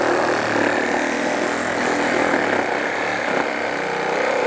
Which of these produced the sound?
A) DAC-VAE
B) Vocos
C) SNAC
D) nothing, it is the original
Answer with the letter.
D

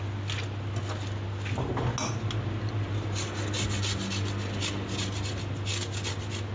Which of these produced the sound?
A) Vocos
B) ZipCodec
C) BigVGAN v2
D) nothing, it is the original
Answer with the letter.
D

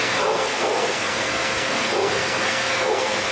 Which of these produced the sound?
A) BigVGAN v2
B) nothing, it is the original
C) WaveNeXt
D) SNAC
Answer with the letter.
D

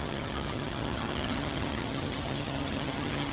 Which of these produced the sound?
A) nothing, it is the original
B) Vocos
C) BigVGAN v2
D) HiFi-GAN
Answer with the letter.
D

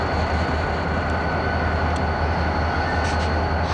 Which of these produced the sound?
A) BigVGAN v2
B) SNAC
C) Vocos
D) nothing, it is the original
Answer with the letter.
D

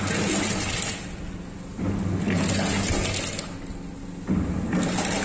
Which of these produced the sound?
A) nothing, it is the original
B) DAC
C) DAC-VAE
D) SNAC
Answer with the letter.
A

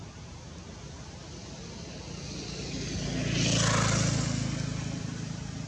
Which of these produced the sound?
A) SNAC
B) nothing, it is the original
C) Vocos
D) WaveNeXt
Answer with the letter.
B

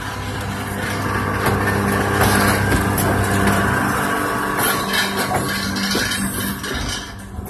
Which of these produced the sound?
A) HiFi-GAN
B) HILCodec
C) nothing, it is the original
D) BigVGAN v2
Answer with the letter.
C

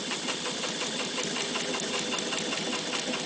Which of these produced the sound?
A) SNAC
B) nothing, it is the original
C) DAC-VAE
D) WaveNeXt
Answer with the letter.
B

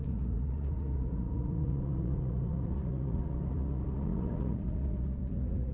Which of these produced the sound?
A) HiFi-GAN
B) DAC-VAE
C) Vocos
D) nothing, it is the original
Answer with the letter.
C